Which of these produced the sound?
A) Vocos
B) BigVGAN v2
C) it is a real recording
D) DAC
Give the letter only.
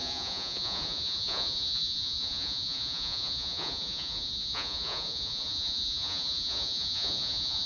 A